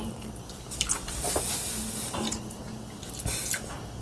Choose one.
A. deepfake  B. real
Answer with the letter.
B